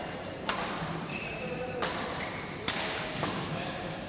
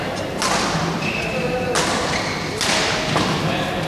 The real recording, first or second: second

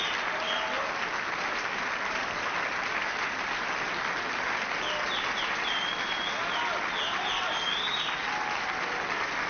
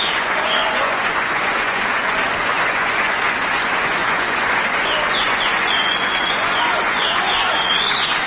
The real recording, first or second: first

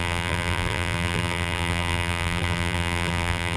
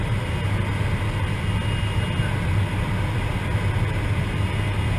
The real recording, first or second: second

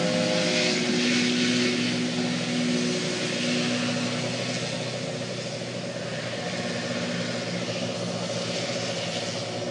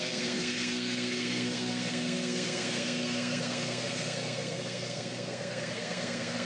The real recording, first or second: first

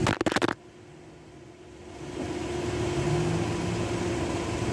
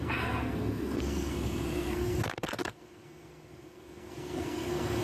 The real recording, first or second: first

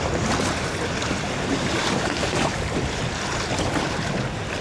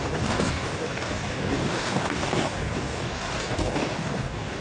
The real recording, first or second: first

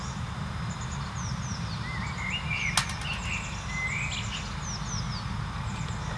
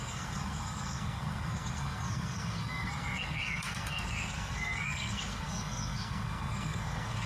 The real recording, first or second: first